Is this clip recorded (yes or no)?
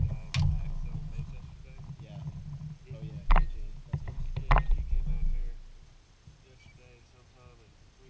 yes